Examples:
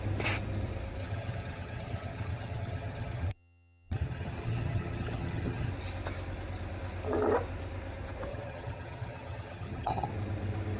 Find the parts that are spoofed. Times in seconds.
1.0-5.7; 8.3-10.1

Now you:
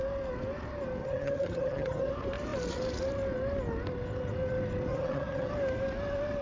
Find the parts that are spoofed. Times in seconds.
1.0-2.1; 4.9-5.5

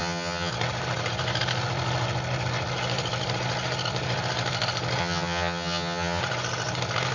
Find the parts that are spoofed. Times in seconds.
0.0-0.5; 5.0-6.2